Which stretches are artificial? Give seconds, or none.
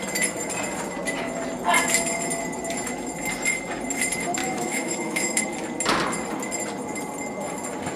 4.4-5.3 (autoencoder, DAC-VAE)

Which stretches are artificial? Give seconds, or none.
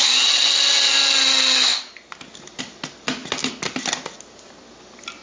none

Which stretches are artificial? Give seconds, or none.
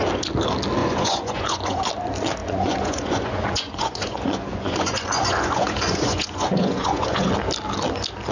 0.8-1.9 (vocoder, Vocos); 2.4-7.3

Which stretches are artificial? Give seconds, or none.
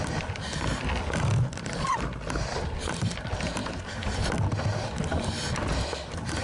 3.6-4.3 (vocoder, BigVGAN v2)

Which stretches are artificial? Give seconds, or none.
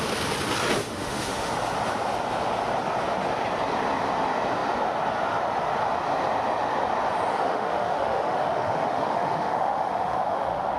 0.8-1.5 (autoencoder, DAC-VAE); 7.3-10.8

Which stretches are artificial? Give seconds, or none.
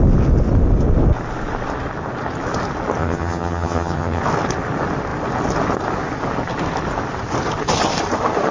3.0-4.2 (vocoder, HiFi-GAN)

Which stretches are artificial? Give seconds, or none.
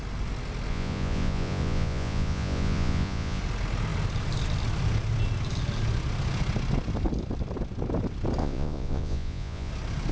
0.7-3.4 (vocoder, Vocos); 8.4-9.7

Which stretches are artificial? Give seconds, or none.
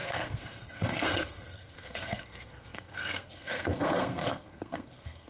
0.0-5.3 (codec, SNAC)